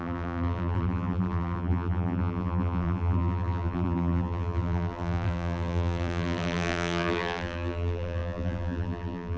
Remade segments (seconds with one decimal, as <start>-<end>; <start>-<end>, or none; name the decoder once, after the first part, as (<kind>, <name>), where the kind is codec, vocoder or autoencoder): 0.0-9.4 (vocoder, BigVGAN v2)

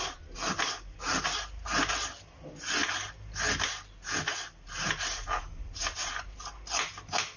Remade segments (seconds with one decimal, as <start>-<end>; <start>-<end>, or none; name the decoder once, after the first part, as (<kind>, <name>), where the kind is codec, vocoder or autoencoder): none

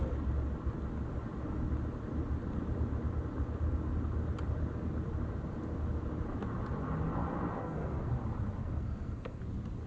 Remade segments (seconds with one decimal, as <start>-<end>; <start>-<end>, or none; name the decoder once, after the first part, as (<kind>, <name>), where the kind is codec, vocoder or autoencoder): 7.6-8.1 (codec, SNAC); 8.6-9.4

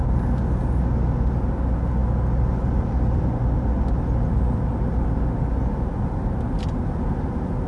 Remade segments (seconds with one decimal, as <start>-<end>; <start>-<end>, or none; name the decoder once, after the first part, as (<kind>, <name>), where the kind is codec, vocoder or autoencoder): none

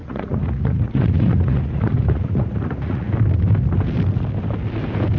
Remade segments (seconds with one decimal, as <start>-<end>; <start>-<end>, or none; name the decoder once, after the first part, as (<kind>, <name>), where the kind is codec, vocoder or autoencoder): 0.0-3.1 (vocoder, Vocos)

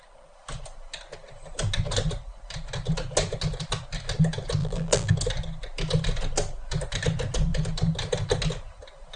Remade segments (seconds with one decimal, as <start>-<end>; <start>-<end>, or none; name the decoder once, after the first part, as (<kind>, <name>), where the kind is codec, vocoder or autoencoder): 4.6-5.1 (vocoder, BigVGAN v2)

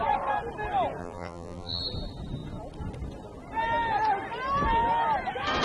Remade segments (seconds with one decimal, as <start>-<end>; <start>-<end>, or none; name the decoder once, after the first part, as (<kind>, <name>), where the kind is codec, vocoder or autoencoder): 1.0-1.8 (vocoder, BigVGAN v2)

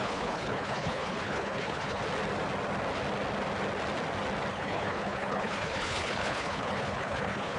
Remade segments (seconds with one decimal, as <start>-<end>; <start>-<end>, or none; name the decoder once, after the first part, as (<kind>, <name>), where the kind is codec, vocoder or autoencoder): 0.0-2.0 (codec, HILCodec); 4.5-7.6